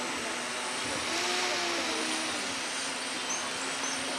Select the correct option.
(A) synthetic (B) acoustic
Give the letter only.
B